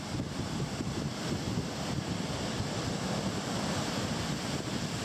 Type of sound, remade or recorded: remade